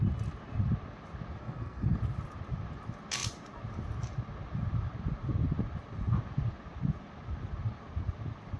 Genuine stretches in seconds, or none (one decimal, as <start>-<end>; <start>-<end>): 0.0-1.4; 2.0-8.6